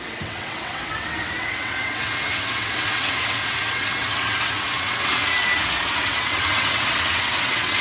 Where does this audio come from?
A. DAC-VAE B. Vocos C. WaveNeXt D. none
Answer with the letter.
C